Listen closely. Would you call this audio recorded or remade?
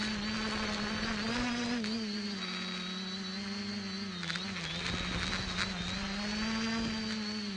recorded